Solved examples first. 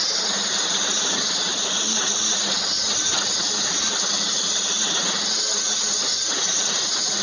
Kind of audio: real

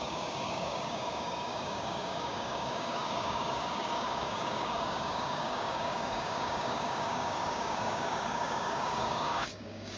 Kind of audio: fake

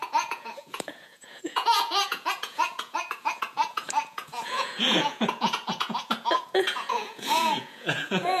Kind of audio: fake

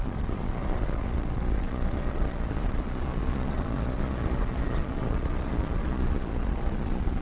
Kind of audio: fake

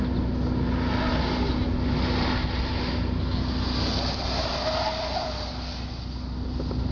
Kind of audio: real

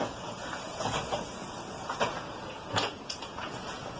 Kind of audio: fake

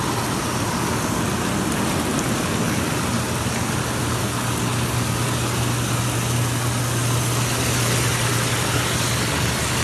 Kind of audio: real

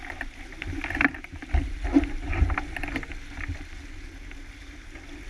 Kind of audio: real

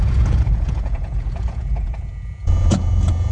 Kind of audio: fake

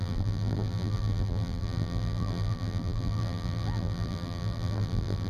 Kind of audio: fake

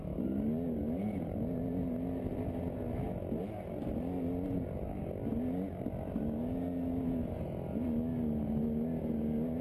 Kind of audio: real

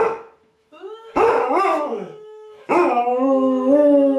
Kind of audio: fake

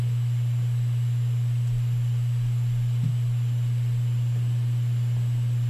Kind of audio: real